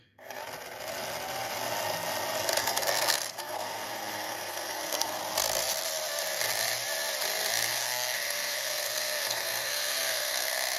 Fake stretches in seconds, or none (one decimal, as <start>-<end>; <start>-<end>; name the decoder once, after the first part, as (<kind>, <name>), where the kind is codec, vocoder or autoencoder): 0.0-0.4 (codec, SNAC); 2.6-5.2; 7.7-10.8